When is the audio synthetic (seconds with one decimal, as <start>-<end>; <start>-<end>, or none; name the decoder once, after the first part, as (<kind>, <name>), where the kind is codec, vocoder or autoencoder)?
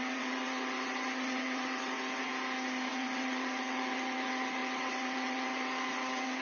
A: 0.0-2.3 (vocoder, WaveNeXt); 2.9-6.4